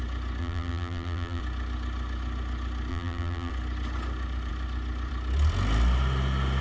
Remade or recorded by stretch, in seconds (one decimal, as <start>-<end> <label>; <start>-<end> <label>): 0.0-0.4 recorded; 0.4-1.4 remade; 1.4-2.9 recorded; 2.9-3.5 remade; 3.5-6.6 recorded